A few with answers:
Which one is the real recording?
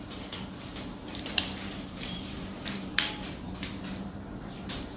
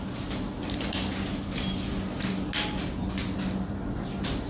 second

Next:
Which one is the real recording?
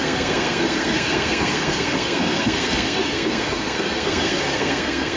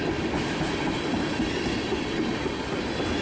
second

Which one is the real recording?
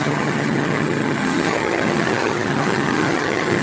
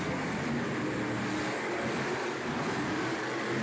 second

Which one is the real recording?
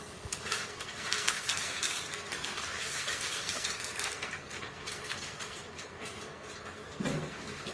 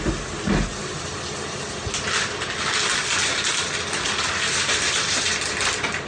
second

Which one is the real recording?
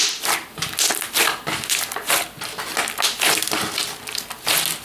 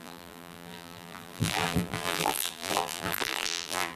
first